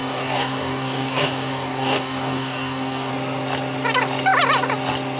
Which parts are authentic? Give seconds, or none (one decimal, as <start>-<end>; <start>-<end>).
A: 3.1-5.2